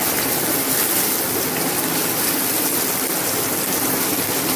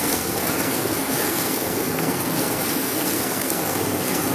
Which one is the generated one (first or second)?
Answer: second